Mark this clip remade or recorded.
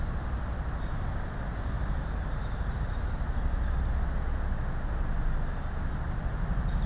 recorded